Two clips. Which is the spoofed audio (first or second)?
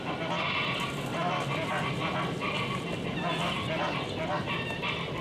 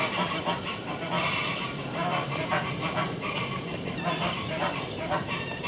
second